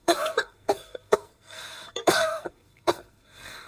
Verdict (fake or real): fake